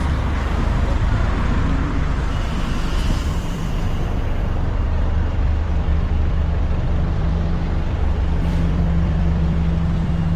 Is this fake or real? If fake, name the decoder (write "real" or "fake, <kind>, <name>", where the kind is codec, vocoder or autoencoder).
fake, vocoder, BigVGAN v2